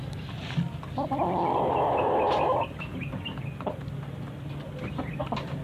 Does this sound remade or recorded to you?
recorded